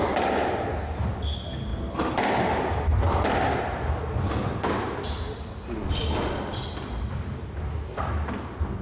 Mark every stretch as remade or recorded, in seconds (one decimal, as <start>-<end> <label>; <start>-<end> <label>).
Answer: 0.0-8.8 recorded